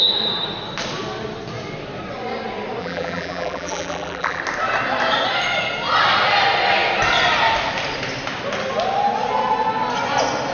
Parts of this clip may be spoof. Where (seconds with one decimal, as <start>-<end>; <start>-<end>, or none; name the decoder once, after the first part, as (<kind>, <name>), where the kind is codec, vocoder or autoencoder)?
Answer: 2.8-4.4 (vocoder, BigVGAN v2)